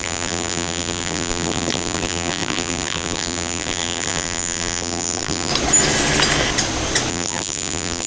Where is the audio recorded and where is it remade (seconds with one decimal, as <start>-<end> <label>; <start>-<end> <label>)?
0.0-5.5 remade; 5.5-7.1 recorded; 7.1-8.1 remade